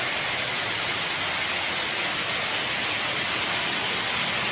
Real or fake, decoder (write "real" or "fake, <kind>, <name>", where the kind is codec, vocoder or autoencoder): real